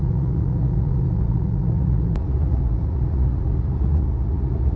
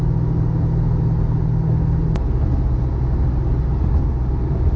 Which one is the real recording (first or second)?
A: second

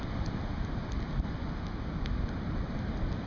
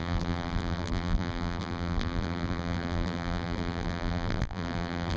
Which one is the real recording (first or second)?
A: first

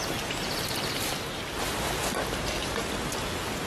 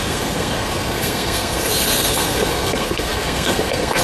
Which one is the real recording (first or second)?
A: first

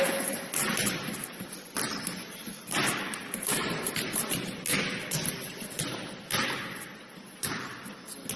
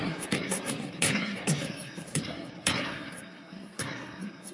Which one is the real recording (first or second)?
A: first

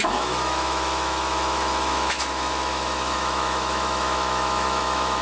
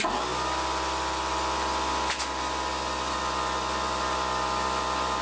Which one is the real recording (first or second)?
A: second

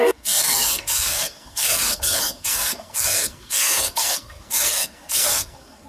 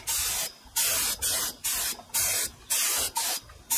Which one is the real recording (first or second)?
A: second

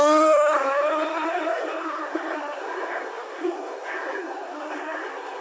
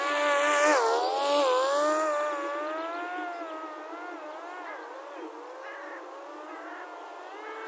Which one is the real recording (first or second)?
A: second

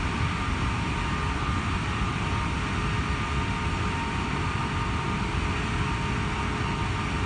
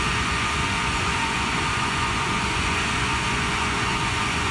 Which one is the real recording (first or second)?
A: first